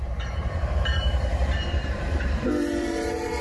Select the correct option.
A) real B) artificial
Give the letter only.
B